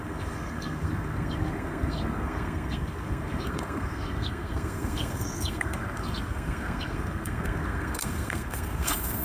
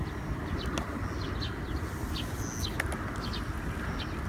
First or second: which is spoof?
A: first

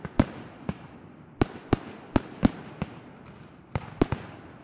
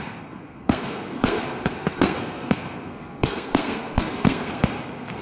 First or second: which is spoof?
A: second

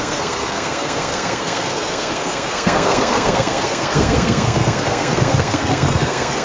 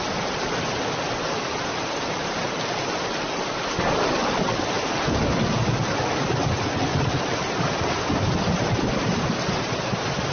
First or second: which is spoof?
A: first